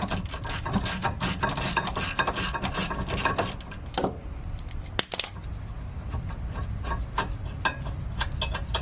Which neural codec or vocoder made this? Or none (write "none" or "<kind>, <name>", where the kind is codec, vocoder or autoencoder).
none